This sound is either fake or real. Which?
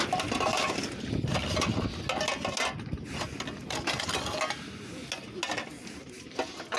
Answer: real